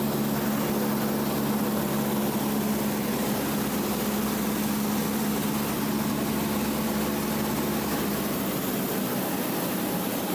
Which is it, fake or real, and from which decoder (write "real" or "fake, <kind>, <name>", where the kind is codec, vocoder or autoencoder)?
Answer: real